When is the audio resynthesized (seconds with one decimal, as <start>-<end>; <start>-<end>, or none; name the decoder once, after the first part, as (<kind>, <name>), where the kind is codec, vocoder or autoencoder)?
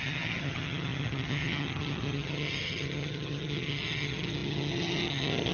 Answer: 0.0-5.5 (vocoder, HiFi-GAN)